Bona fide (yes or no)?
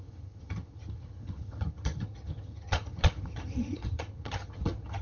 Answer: no